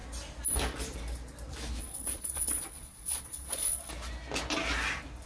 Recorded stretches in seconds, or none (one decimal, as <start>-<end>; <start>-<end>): 0.0-1.8; 3.9-5.3